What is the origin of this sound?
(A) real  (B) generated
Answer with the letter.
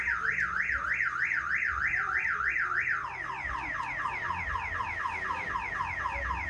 A